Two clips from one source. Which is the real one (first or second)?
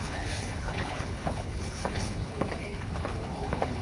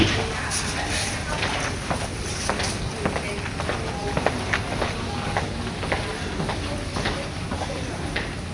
second